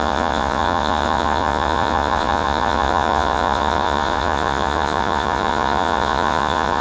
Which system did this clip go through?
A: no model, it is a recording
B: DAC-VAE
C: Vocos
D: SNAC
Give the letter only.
C